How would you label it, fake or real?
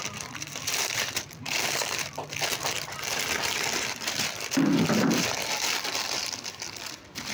fake